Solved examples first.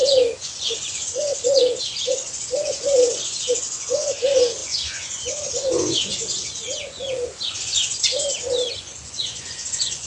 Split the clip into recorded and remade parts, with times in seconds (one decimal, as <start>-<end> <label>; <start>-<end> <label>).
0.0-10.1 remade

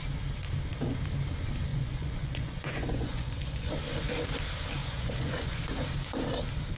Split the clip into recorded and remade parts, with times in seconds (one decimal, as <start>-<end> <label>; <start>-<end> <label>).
0.0-1.7 recorded; 1.7-3.7 remade; 3.7-4.8 recorded; 4.8-5.6 remade; 5.6-6.8 recorded

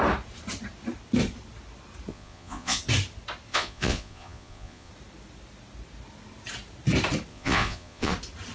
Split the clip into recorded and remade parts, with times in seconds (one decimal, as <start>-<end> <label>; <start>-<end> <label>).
0.0-2.1 recorded; 2.1-2.8 remade; 2.8-3.5 recorded; 3.5-4.9 remade; 4.9-7.3 recorded; 7.3-8.1 remade; 8.1-8.5 recorded

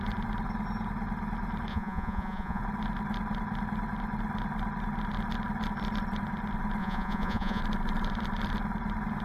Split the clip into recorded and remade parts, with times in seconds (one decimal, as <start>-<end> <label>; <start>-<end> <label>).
0.0-1.7 recorded; 1.7-2.6 remade; 2.6-6.8 recorded; 6.8-7.6 remade; 7.6-9.2 recorded